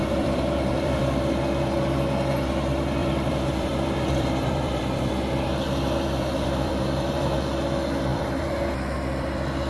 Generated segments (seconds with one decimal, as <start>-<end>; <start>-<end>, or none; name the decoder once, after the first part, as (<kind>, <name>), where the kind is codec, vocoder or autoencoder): 0.0-1.0 (vocoder, BigVGAN v2); 3.0-7.3; 8.1-9.7